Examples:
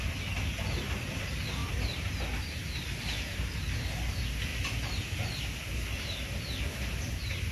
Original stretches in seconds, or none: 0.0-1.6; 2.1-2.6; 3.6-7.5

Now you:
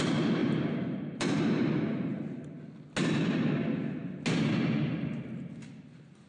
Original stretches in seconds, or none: 0.0-0.4; 1.4-6.3

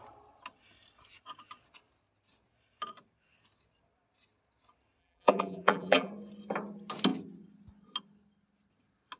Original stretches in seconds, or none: 0.0-5.0; 6.1-9.2

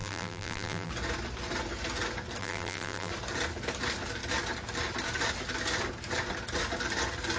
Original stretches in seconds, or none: 0.9-2.4; 3.1-7.4

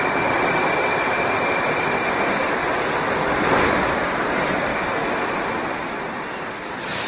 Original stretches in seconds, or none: 0.0-7.1

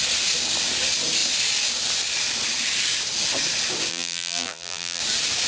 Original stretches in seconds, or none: 0.0-3.9; 5.0-5.5

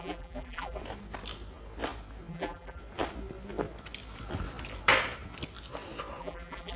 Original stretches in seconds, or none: 0.8-2.3; 2.8-6.2

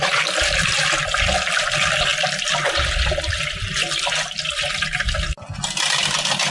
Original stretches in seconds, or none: 0.0-2.1; 4.5-6.5